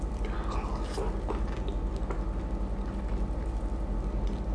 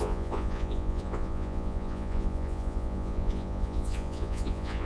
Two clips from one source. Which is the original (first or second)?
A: first